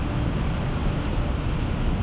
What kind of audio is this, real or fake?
real